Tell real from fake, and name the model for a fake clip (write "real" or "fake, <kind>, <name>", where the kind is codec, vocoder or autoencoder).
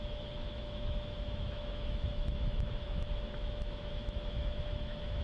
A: fake, autoencoder, DAC-VAE